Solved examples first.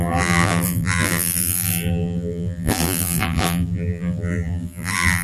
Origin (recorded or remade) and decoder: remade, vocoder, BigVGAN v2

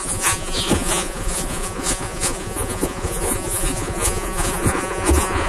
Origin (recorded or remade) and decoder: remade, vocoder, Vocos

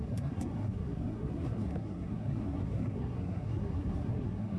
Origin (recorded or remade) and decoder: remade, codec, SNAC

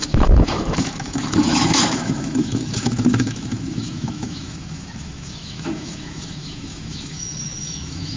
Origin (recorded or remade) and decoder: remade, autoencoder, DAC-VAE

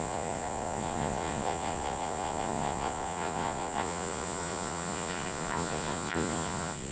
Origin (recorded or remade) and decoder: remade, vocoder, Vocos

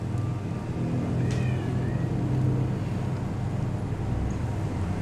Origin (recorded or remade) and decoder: recorded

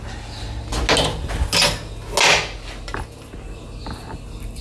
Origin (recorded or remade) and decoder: recorded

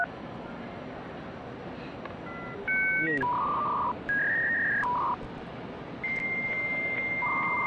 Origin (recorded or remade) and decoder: recorded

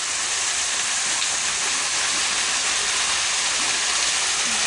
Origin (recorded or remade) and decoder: recorded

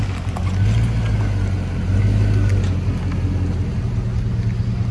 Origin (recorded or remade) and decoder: recorded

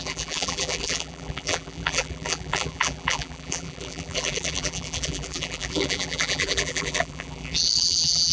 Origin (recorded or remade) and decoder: remade, vocoder, BigVGAN v2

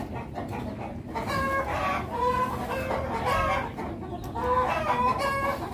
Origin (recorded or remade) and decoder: recorded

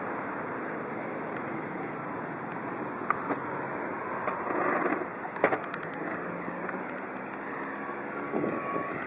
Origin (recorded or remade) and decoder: recorded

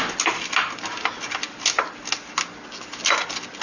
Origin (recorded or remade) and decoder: recorded